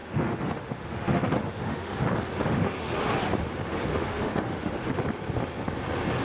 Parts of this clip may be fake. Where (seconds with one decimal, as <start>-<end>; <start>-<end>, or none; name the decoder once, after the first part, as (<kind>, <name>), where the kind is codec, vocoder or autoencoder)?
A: 0.0-2.0 (autoencoder, DAC-VAE); 2.4-3.1; 3.9-4.9